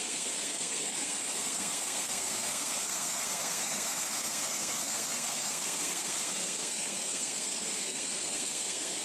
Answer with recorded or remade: remade